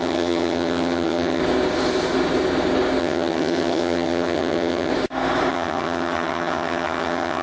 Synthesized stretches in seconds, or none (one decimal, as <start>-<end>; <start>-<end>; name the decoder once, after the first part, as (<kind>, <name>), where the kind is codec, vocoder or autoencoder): 0.0-1.4 (vocoder, HiFi-GAN); 3.0-4.9; 5.5-7.4